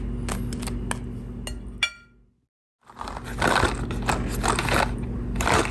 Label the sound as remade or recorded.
recorded